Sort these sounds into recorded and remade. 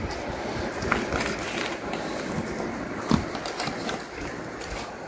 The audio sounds recorded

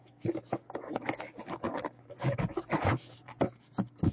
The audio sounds remade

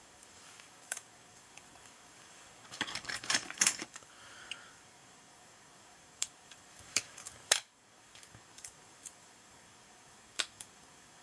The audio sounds remade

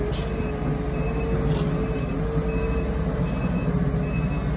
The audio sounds recorded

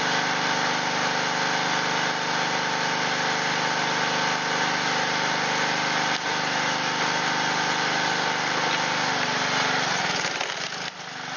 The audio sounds recorded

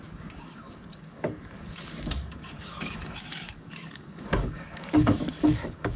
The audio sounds remade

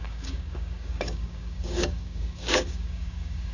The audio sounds remade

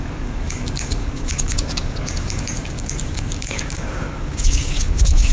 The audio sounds remade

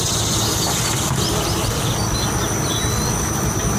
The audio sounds recorded